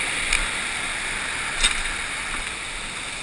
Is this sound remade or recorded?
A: recorded